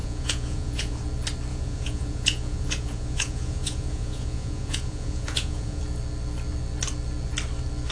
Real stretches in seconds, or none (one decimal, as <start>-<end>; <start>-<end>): 1.0-1.5; 5.8-7.9